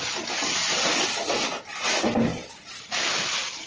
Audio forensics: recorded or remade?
recorded